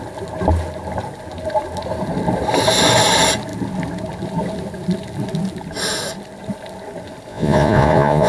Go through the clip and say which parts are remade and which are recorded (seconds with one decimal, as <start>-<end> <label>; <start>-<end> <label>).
0.0-7.3 recorded; 7.3-8.3 remade